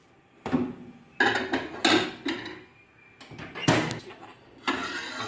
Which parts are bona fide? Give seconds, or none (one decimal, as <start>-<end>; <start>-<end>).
0.0-5.3